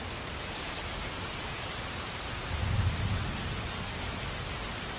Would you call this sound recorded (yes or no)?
yes